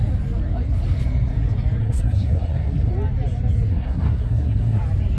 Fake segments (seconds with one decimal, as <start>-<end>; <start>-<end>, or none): 1.8-2.9; 3.7-4.8